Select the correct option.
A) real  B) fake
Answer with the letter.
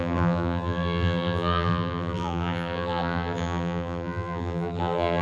B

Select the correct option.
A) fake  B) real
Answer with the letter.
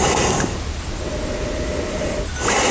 B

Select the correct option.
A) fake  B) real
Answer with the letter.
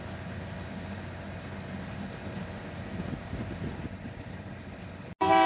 B